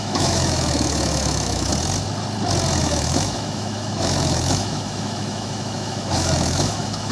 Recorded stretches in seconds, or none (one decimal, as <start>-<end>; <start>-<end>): 1.7-2.8